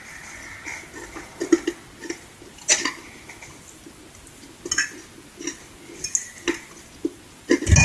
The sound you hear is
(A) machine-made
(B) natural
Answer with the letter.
B